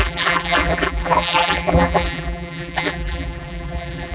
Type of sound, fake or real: fake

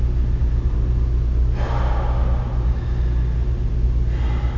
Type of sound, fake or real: real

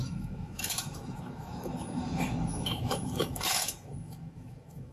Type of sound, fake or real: fake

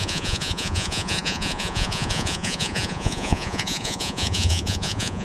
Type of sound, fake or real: fake